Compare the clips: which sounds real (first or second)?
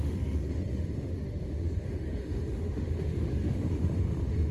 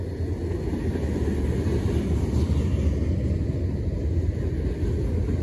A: second